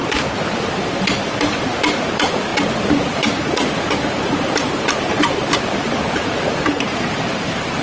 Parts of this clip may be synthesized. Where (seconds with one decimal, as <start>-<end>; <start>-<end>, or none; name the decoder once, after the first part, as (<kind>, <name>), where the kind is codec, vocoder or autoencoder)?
0.0-7.8 (vocoder, BigVGAN v2)